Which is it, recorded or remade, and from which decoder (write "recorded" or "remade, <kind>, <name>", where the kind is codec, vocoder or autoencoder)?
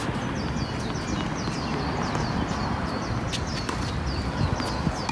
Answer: recorded